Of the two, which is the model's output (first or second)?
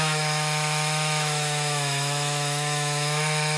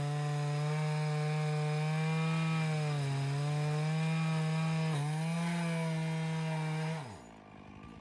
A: first